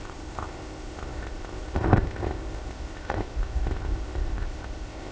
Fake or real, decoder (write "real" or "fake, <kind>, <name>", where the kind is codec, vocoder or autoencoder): fake, codec, ZipCodec